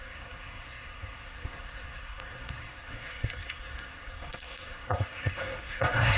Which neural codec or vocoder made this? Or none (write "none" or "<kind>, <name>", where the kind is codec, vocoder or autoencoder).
codec, SNAC